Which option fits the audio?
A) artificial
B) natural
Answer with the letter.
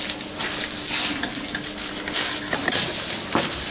B